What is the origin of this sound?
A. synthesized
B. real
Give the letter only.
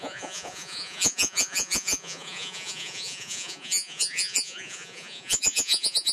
A